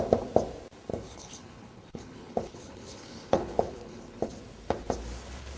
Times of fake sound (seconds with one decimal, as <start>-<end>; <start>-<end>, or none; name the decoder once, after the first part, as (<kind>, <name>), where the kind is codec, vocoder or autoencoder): 0.9-4.3 (codec, HILCodec)

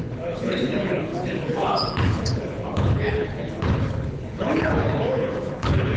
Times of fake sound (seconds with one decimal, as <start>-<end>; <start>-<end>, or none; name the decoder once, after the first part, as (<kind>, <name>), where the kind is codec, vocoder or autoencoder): 0.0-6.0 (codec, HILCodec)

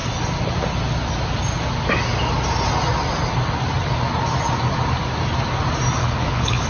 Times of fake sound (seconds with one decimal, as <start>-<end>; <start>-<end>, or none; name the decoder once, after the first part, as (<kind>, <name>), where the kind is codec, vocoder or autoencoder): 6.0-6.7 (codec, HILCodec)

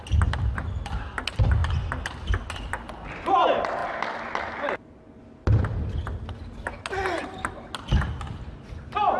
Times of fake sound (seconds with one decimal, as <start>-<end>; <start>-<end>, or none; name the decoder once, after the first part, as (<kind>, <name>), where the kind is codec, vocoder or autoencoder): none

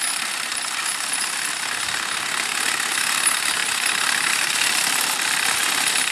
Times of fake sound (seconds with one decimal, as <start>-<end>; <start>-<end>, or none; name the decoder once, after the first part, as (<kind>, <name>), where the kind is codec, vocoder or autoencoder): none

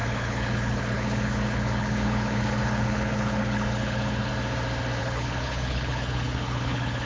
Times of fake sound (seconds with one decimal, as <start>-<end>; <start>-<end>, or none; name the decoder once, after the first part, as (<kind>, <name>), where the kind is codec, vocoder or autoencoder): 0.0-4.3 (codec, HILCodec); 5.0-7.1

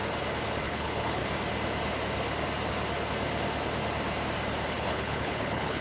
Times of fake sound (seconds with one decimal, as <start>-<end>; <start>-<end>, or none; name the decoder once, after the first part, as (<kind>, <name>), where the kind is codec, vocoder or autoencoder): 0.6-1.2 (codec, HILCodec); 4.7-5.8

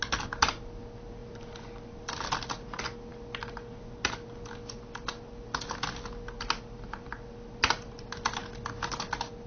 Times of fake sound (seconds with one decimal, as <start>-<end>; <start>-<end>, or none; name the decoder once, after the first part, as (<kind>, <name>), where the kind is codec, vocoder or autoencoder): none